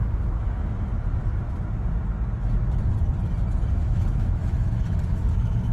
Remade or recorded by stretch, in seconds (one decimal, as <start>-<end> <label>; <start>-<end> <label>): 0.0-0.9 remade; 0.9-3.7 recorded; 3.7-5.7 remade